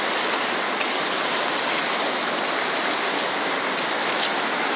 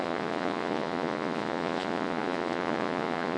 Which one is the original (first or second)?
first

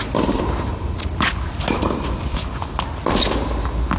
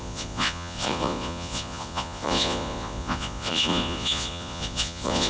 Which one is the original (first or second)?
first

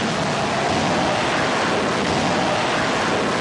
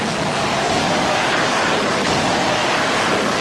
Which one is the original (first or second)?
first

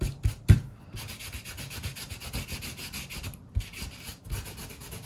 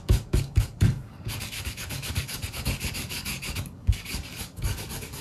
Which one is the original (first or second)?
first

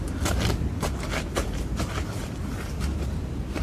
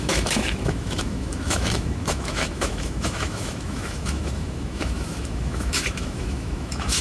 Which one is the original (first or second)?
first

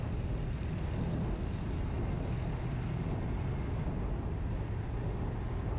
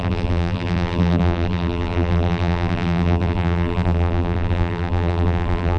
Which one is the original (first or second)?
first